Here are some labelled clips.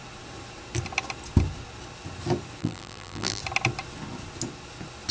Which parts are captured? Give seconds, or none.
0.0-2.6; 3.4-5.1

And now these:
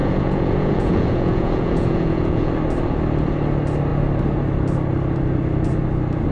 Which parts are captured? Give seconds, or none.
2.5-6.3

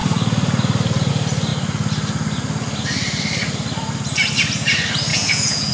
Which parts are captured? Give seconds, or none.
0.0-5.1

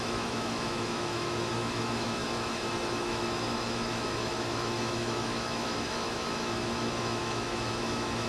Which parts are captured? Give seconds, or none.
none

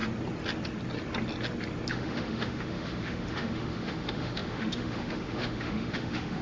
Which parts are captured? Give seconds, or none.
0.0-1.9

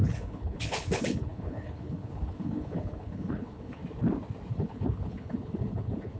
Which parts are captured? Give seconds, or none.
3.8-4.5

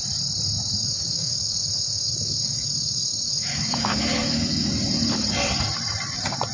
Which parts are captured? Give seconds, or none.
0.0-0.8; 4.7-6.5